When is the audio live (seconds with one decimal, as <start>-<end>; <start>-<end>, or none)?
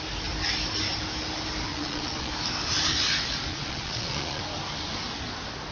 0.0-1.7; 2.3-3.5; 4.4-5.7